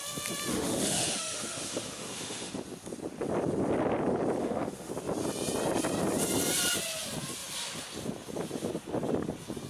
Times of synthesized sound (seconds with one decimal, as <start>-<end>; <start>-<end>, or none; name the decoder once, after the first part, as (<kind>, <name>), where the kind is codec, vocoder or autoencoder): 0.5-2.5 (autoencoder, DAC-VAE); 4.4-4.9